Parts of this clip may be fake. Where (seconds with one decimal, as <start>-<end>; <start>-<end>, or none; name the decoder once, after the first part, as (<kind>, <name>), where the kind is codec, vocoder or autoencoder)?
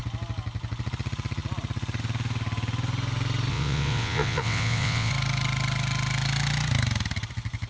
3.5-5.1 (vocoder, WaveNeXt)